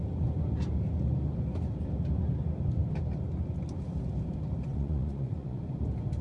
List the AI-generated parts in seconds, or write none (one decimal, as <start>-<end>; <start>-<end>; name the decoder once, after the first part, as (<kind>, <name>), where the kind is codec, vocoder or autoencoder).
4.7-5.6 (vocoder, Vocos)